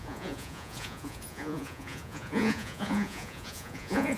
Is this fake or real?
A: fake